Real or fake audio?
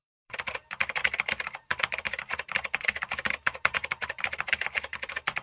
fake